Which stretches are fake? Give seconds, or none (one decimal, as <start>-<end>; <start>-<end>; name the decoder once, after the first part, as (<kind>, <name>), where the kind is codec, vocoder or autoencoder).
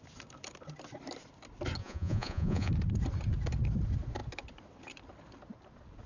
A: 1.8-2.7 (vocoder, Vocos)